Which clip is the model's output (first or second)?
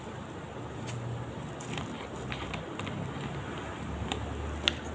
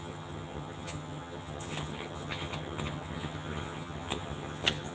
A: second